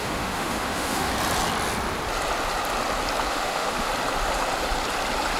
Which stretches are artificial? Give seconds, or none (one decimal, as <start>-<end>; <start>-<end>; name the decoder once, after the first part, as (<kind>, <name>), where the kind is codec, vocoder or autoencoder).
0.0-1.1 (autoencoder, DAC-VAE); 3.3-3.9